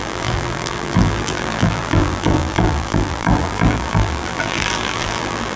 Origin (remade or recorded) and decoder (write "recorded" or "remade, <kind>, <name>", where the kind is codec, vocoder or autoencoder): remade, vocoder, BigVGAN v2